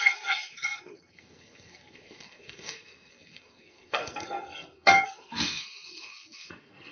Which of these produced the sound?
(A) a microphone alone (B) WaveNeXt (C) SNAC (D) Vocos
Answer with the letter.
C